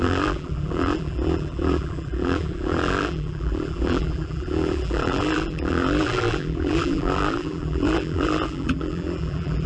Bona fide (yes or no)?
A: no